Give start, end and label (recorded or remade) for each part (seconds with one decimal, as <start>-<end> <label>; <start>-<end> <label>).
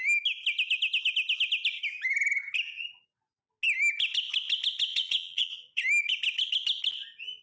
0.0-4.9 recorded; 4.9-5.8 remade; 5.8-7.4 recorded